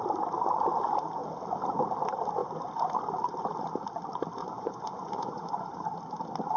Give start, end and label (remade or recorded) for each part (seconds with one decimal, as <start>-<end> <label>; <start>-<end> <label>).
0.0-4.4 recorded; 4.4-6.0 remade; 6.0-6.6 recorded